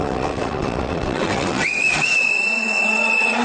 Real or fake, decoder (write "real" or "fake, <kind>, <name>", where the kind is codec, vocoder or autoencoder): fake, vocoder, WaveNeXt